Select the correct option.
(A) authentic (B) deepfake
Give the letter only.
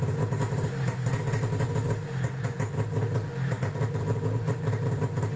B